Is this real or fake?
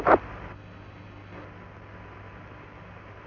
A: real